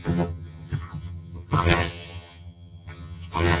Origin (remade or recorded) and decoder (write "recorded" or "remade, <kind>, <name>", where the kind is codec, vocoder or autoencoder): remade, vocoder, HiFi-GAN